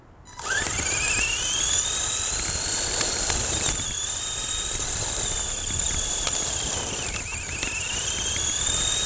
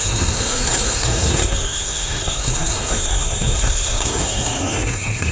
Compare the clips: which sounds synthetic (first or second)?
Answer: second